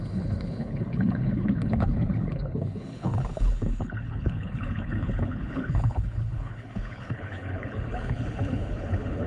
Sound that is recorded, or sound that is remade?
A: remade